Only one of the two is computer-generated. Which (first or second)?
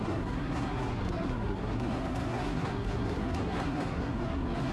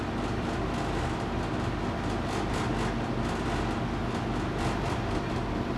first